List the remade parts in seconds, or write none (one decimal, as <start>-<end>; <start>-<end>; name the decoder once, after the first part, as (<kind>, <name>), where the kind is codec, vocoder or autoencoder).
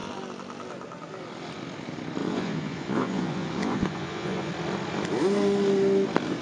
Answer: 2.2-4.5 (vocoder, Vocos)